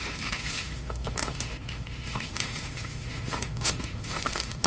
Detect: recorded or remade remade